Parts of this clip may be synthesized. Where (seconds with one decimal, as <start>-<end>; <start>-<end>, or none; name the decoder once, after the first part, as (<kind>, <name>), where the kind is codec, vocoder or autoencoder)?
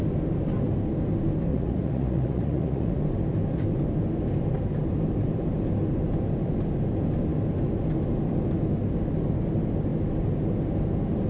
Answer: 1.5-3.0 (vocoder, Vocos)